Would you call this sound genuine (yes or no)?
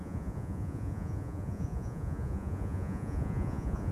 no